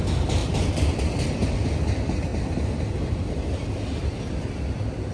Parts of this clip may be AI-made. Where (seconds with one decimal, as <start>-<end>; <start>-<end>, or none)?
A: 0.4-1.0; 1.4-1.9; 2.3-5.1